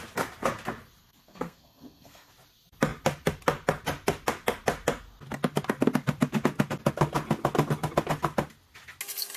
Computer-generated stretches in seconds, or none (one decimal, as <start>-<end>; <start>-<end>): 1.0-2.3